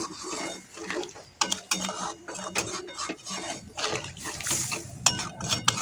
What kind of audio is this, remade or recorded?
recorded